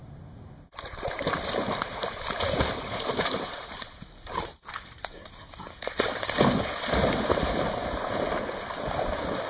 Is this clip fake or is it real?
fake